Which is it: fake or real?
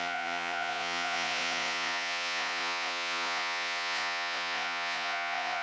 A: fake